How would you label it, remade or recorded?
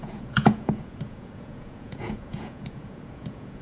remade